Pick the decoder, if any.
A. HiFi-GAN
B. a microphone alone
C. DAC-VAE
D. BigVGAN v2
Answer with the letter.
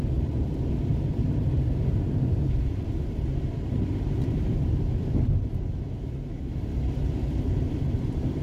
D